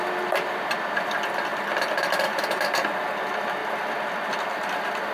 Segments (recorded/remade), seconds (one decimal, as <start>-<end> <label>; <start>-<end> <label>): 0.0-5.1 recorded